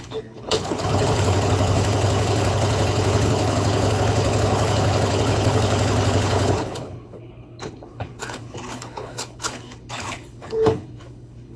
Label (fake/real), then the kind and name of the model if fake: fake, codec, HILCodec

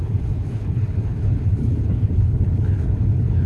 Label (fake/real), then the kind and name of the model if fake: fake, codec, HILCodec